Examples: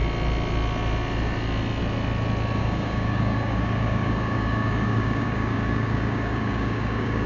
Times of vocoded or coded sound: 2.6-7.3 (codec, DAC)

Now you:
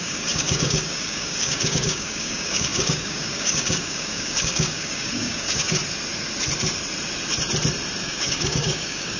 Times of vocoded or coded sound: 0.0-5.8 (codec, DAC); 8.0-9.2

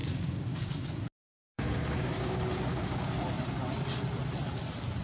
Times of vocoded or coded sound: 0.0-0.9 (codec, DAC); 1.5-3.1

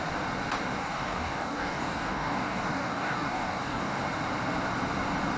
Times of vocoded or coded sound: 0.8-4.0 (codec, DAC)